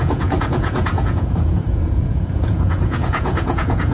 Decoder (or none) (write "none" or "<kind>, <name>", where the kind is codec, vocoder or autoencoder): vocoder, Vocos